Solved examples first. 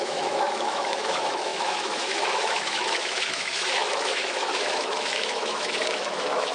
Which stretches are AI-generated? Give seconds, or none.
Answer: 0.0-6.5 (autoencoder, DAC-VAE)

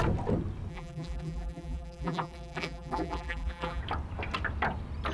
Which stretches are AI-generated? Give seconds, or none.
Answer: 0.7-3.8 (vocoder, BigVGAN v2)

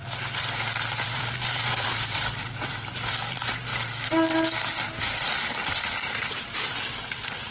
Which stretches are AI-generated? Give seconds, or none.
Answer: 0.0-3.7 (vocoder, BigVGAN v2); 5.3-7.5

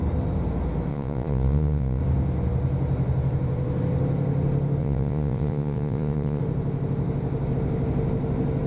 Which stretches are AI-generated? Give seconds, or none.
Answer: 0.9-2.0 (vocoder, Vocos); 4.8-6.4

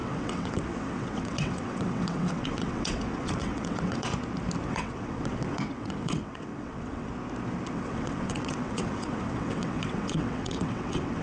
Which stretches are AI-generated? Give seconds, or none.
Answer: 0.0-4.1 (vocoder, WaveNeXt); 4.7-7.1; 7.7-11.2